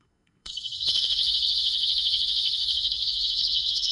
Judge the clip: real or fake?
fake